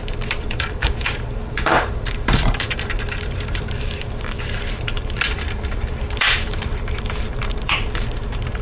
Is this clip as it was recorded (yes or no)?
no